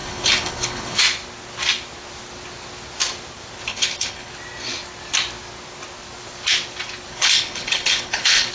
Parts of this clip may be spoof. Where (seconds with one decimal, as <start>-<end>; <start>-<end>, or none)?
0.0-1.0; 3.7-4.3; 7.1-8.5